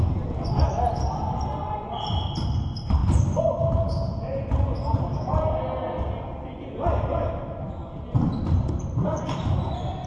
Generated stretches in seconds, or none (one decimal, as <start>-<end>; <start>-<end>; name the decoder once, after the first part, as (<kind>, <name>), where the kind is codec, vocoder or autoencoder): none